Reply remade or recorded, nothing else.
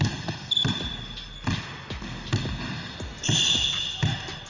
recorded